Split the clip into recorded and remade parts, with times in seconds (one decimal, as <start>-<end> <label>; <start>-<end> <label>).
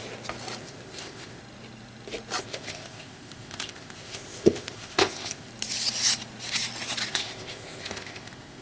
0.0-0.6 recorded; 0.6-1.4 remade; 1.4-2.4 recorded; 2.4-5.5 remade; 5.5-7.1 recorded; 7.1-8.6 remade